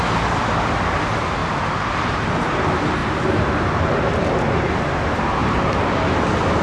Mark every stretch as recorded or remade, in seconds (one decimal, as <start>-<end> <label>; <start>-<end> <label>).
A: 0.0-1.4 recorded; 1.4-1.9 remade; 1.9-3.0 recorded; 3.0-4.2 remade; 4.2-5.4 recorded; 5.4-5.9 remade; 5.9-6.6 recorded